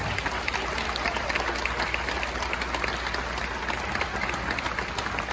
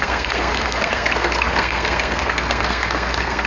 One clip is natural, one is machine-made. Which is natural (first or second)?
first